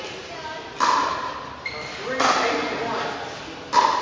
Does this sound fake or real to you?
real